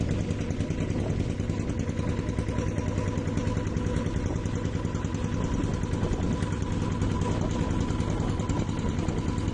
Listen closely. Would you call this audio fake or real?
real